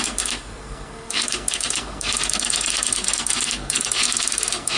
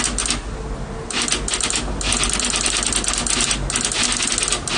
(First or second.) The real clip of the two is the second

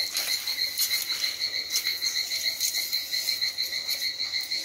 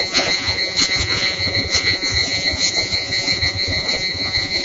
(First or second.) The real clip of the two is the first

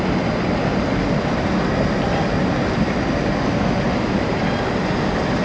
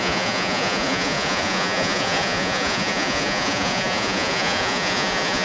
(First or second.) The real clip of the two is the first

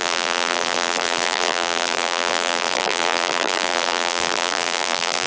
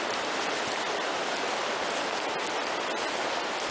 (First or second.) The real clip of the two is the second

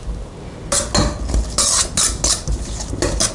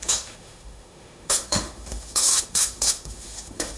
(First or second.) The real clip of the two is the first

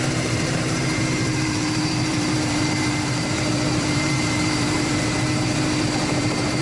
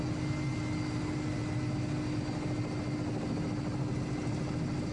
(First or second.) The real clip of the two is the second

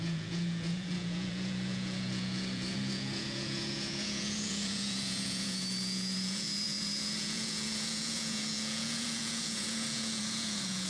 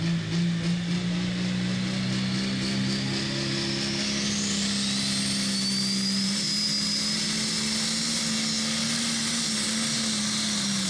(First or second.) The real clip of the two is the second